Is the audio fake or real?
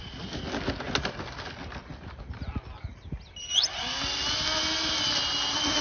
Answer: real